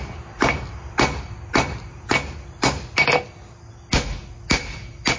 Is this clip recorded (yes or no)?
yes